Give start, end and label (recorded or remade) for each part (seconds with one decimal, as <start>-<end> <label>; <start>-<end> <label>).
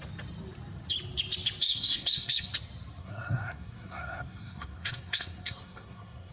0.0-1.6 recorded; 1.6-2.5 remade; 2.5-3.0 recorded; 3.0-6.3 remade